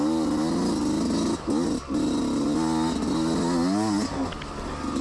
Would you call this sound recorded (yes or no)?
yes